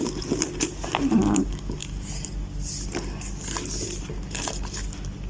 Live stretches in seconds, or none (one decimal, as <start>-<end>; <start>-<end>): 0.0-5.3